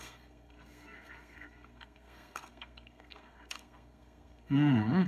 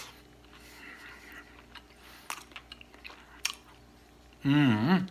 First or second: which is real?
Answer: second